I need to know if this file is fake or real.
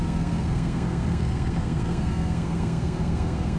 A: fake